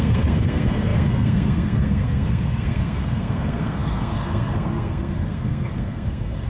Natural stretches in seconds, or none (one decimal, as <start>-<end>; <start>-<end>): none